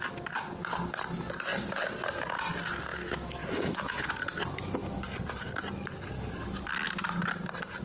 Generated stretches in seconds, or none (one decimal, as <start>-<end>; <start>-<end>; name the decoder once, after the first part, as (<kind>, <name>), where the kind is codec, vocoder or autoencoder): 2.9-4.1 (autoencoder, DAC-VAE)